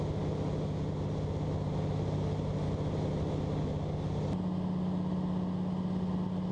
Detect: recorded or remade recorded